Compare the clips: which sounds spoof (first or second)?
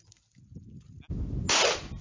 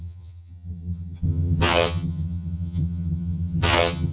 second